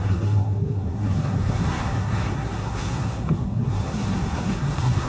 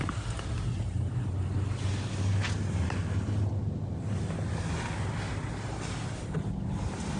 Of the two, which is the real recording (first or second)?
second